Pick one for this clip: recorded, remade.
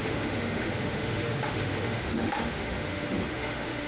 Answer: remade